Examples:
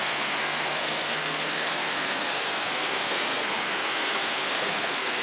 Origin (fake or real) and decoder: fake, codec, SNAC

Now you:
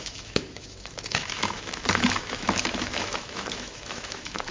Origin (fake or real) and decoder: fake, autoencoder, DAC-VAE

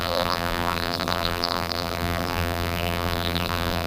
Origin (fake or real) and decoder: fake, vocoder, BigVGAN v2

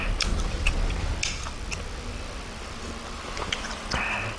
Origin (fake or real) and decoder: real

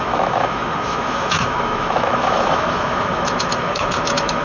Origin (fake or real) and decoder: fake, autoencoder, DAC-VAE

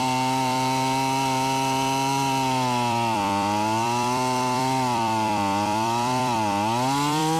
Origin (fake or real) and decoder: fake, vocoder, BigVGAN v2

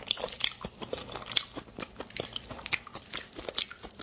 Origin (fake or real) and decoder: fake, vocoder, BigVGAN v2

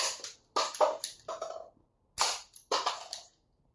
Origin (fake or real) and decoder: real